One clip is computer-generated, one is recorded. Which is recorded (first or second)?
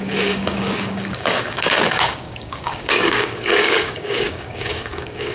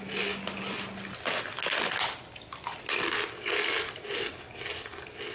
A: second